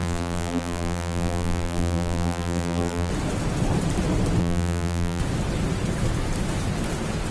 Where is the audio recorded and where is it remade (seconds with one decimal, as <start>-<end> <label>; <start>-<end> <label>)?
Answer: 0.0-3.1 remade; 3.1-4.4 recorded; 4.4-5.2 remade; 5.2-7.3 recorded